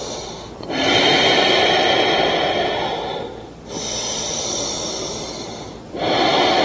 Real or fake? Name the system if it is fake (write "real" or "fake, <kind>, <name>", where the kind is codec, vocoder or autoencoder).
real